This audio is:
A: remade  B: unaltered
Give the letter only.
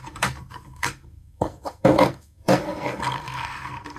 A